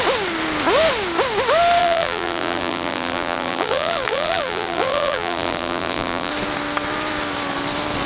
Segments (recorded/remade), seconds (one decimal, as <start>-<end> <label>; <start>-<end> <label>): 0.0-1.8 recorded; 1.8-6.3 remade; 6.3-8.1 recorded